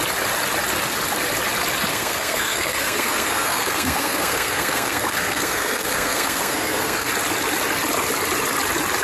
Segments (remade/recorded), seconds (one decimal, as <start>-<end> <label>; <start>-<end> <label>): 0.0-1.9 recorded; 1.9-7.1 remade; 7.1-9.0 recorded